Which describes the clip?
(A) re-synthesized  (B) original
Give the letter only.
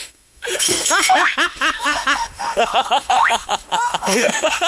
A